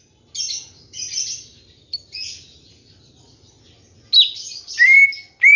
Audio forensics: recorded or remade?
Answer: recorded